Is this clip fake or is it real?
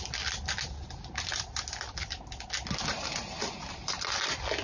real